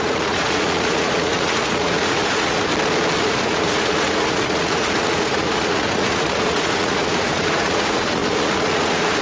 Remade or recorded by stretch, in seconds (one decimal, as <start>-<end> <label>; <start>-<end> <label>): 0.0-2.7 remade; 2.7-3.2 recorded; 3.2-9.2 remade